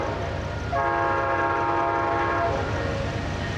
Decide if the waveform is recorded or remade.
recorded